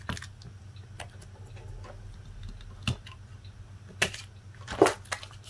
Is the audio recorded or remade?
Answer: recorded